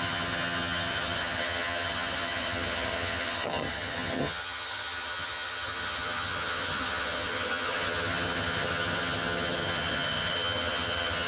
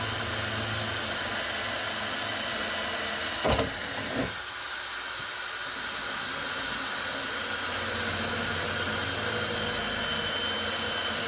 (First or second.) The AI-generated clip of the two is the first